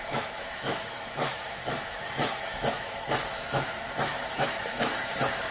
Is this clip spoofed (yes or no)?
yes